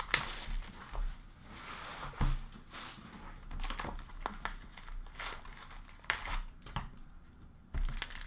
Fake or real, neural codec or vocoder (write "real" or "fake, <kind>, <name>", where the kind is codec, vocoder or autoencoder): real